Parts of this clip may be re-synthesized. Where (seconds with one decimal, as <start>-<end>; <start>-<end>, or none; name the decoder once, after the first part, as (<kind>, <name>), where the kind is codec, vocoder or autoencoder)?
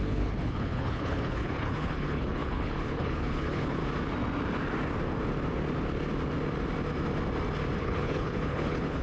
0.0-3.8 (codec, HILCodec); 7.8-9.0